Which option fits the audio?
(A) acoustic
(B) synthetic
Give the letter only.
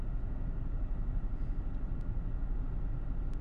A